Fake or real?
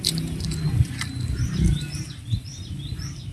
real